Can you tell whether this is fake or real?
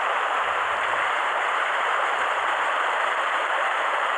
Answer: fake